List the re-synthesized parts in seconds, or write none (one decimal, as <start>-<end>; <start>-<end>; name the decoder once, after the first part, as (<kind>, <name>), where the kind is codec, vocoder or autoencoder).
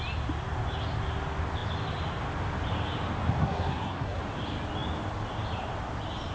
3.4-4.2 (codec, SNAC)